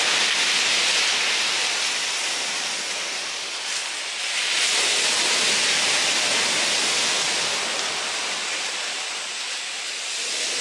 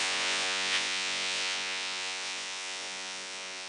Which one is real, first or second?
first